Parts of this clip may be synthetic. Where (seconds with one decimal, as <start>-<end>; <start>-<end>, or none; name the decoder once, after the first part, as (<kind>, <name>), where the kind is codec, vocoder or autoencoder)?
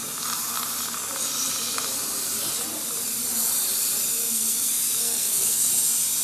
4.2-5.7 (codec, SNAC)